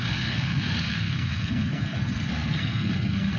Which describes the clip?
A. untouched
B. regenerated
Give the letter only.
B